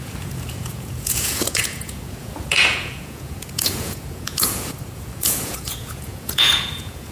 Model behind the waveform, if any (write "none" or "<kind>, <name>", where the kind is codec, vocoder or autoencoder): vocoder, Vocos